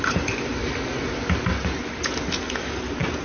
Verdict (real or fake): real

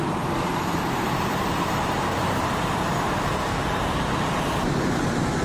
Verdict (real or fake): fake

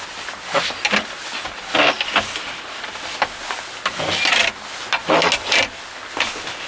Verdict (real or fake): real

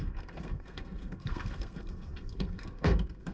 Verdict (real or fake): fake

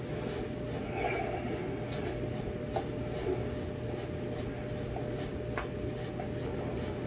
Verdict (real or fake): real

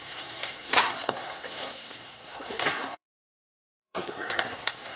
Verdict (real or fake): fake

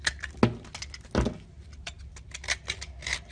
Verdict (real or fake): real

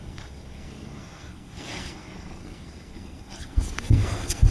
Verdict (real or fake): fake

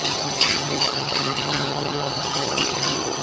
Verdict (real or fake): fake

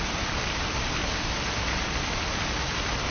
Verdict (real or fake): real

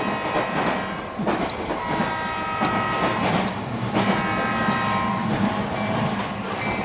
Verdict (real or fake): real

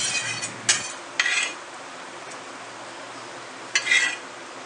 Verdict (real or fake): real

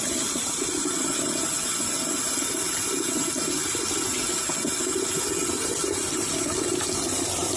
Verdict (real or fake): real